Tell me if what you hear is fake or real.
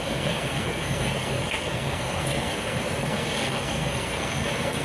fake